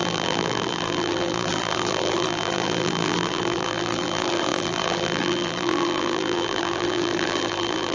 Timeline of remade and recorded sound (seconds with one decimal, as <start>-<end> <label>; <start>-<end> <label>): 0.0-7.9 remade